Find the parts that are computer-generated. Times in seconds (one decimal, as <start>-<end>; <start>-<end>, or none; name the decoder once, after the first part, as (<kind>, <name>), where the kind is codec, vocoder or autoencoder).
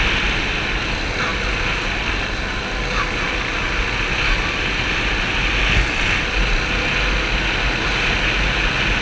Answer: none